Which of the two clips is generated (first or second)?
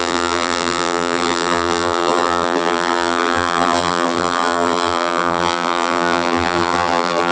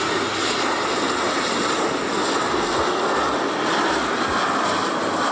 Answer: first